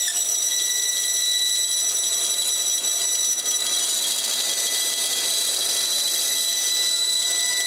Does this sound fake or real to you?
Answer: real